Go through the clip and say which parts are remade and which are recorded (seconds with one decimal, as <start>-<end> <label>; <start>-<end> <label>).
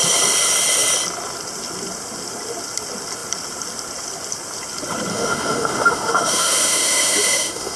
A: 0.0-5.1 recorded; 5.1-7.8 remade